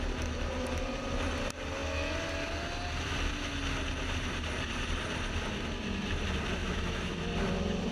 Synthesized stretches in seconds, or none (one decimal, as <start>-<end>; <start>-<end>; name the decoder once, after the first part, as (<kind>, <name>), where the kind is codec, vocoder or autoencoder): 6.6-7.2 (autoencoder, DAC-VAE)